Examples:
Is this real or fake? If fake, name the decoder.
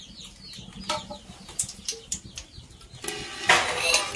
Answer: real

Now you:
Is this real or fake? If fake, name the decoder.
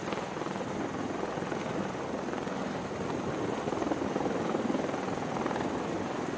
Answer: real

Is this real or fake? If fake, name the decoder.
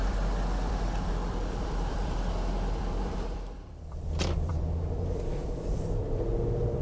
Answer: fake, vocoder, BigVGAN v2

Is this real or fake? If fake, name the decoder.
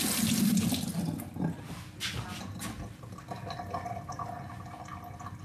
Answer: real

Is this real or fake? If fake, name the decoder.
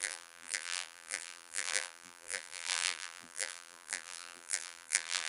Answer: fake, vocoder, BigVGAN v2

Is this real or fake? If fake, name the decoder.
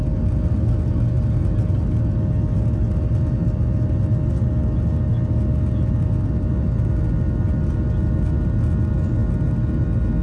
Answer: real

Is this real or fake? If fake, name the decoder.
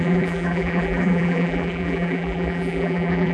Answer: fake, vocoder, BigVGAN v2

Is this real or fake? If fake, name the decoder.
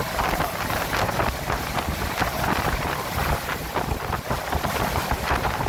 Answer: real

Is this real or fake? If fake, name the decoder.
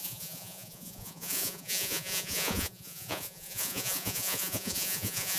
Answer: fake, vocoder, Vocos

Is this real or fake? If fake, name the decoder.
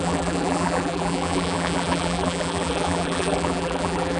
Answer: fake, vocoder, BigVGAN v2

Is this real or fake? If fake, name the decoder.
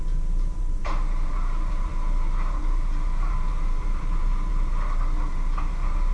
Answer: fake, vocoder, BigVGAN v2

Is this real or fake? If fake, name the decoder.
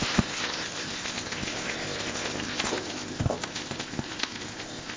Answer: fake, codec, ZipCodec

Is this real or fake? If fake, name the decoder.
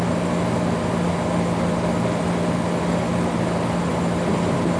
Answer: real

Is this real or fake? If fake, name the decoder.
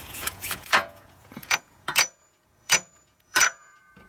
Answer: fake, vocoder, Vocos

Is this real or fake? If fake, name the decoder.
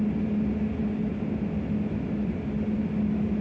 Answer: real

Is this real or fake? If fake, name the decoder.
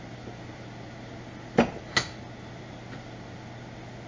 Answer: real